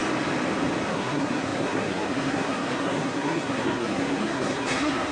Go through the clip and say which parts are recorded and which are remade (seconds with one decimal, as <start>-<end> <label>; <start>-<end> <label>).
0.0-0.9 recorded; 0.9-5.1 remade